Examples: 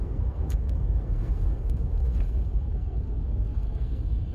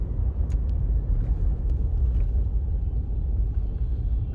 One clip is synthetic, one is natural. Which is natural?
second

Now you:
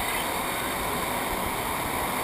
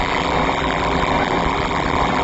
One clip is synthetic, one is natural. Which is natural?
first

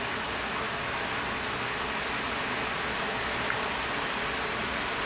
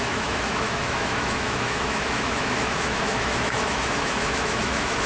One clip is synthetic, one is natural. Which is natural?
first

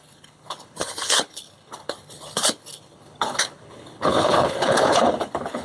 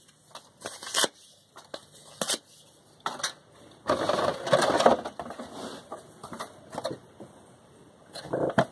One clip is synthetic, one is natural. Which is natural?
second